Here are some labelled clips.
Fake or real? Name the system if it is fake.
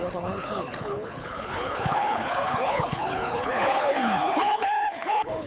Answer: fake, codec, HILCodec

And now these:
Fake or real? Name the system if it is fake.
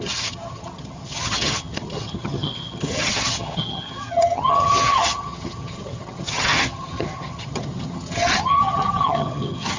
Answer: fake, vocoder, HiFi-GAN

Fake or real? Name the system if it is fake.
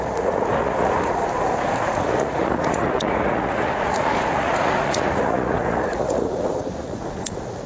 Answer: fake, vocoder, Vocos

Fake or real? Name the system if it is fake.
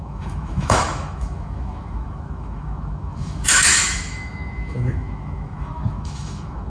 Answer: fake, autoencoder, DAC-VAE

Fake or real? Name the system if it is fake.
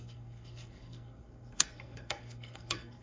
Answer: fake, codec, SNAC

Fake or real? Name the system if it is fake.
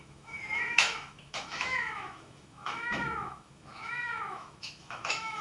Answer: fake, autoencoder, DAC-VAE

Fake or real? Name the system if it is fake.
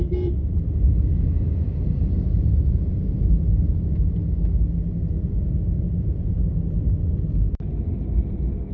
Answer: real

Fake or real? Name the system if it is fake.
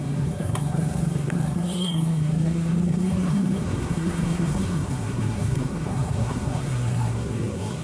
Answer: fake, codec, SNAC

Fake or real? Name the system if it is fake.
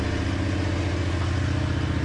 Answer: real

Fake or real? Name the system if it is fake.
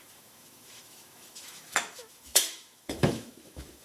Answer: fake, autoencoder, DAC-VAE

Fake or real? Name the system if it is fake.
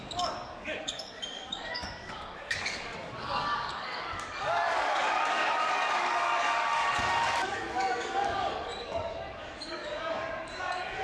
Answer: fake, codec, DAC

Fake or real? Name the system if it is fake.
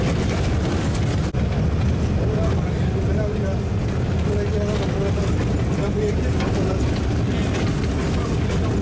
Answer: real